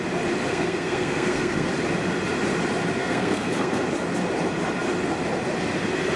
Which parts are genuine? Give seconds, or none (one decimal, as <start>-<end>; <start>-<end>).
0.0-0.5; 1.7-3.0; 3.8-6.2